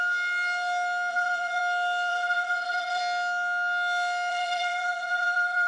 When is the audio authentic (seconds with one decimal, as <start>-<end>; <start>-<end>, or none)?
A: 0.0-1.1; 1.6-2.1; 3.0-4.3